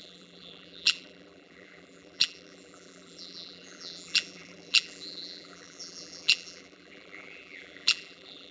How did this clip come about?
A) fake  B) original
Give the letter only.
A